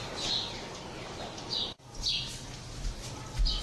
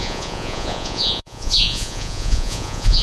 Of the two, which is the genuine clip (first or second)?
first